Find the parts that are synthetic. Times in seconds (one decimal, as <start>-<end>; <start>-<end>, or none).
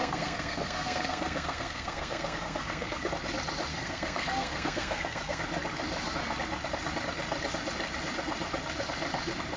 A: 0.0-3.1; 3.7-5.4